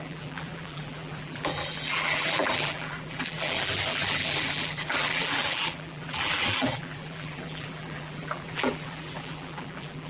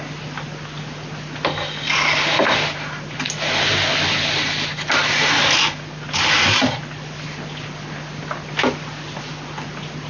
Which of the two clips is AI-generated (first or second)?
first